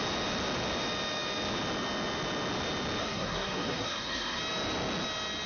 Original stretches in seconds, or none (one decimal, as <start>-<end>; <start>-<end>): 0.0-3.0; 4.4-5.5